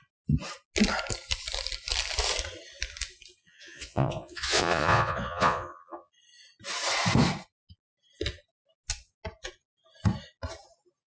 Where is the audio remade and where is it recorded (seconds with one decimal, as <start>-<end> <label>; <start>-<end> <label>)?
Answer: 0.0-3.4 recorded; 3.4-6.1 remade; 6.1-11.1 recorded